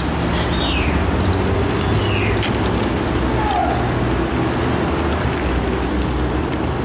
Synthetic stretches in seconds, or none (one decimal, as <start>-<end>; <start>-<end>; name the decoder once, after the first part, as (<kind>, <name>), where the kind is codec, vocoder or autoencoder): none